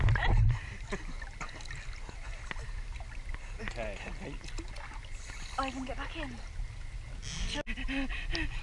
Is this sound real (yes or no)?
yes